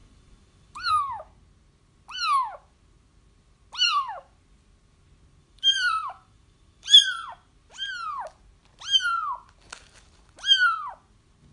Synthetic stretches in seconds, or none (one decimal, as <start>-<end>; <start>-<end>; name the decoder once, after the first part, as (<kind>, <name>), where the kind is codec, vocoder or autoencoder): 0.0-0.9 (vocoder, BigVGAN v2); 5.4-7.0